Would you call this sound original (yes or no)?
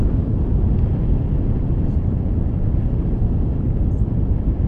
yes